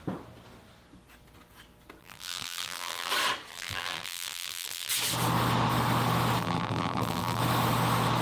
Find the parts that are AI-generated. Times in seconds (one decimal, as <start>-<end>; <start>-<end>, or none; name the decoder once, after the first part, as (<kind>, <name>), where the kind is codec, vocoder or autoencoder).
2.0-3.1 (vocoder, BigVGAN v2); 3.5-4.9; 6.4-7.4

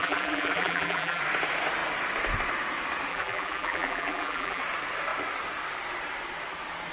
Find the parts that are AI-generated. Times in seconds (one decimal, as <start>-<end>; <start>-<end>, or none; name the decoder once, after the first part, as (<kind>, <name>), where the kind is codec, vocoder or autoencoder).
0.0-1.2 (vocoder, BigVGAN v2); 3.1-4.6

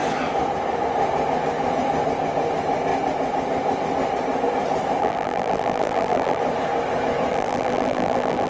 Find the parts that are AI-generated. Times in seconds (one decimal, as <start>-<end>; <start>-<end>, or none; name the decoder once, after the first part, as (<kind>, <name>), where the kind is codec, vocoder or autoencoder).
5.0-6.4 (vocoder, BigVGAN v2); 7.3-8.5

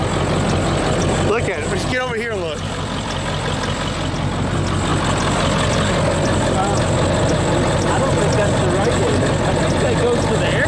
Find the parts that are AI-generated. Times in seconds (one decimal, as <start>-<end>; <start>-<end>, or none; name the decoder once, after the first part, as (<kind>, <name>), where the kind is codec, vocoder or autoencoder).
none

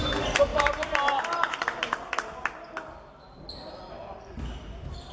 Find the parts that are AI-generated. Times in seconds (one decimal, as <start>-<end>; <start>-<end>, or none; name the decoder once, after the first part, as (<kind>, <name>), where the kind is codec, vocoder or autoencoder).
0.5-1.2 (vocoder, BigVGAN v2)

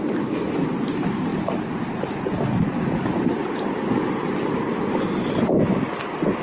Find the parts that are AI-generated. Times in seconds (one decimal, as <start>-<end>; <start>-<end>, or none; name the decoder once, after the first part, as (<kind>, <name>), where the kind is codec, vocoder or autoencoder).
3.4-4.0 (vocoder, BigVGAN v2)